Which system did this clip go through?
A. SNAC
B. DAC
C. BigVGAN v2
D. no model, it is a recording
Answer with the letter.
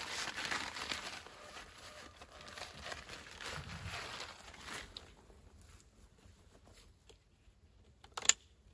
D